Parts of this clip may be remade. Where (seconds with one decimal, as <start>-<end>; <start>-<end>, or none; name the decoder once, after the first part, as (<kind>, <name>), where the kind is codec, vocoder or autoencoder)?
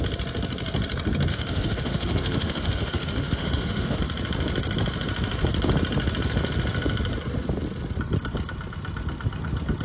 1.3-4.0 (autoencoder, DAC-VAE)